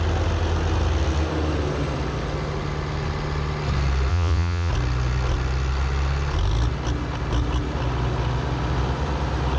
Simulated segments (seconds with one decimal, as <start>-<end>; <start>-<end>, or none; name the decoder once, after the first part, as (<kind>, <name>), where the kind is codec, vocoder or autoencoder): 4.1-4.7 (vocoder, Vocos)